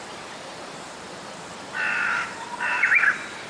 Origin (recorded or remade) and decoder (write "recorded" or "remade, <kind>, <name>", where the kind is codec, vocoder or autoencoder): remade, vocoder, BigVGAN v2